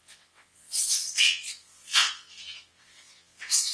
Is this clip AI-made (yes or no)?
yes